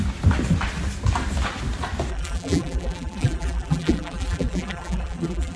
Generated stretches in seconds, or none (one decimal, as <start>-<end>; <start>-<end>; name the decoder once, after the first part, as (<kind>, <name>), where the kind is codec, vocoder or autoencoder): 2.1-5.6 (vocoder, BigVGAN v2)